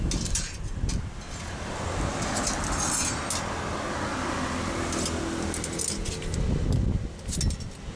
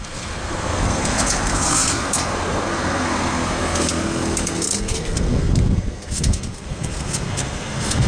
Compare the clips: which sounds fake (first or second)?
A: second